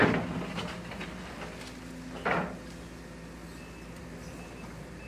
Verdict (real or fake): real